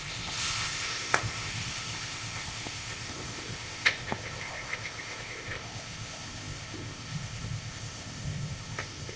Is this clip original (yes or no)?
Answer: no